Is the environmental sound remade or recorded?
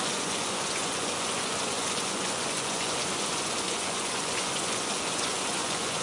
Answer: remade